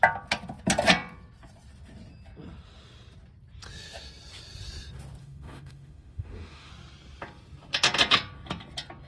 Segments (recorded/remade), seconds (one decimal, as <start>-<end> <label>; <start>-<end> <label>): 0.0-5.2 recorded; 5.2-6.7 remade; 6.7-9.1 recorded